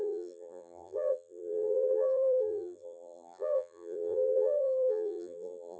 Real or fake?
fake